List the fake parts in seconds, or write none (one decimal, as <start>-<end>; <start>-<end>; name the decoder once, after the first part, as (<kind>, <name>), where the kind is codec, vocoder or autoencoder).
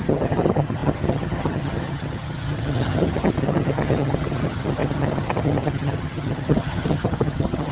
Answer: 0.0-7.7 (vocoder, HiFi-GAN)